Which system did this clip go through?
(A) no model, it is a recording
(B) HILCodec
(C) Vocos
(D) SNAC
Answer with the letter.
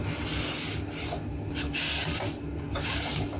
A